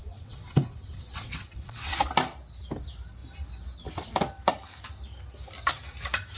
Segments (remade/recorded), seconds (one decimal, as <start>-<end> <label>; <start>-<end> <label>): 0.0-2.1 remade; 2.1-6.4 recorded